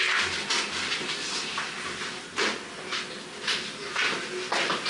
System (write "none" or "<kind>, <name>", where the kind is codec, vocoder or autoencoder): none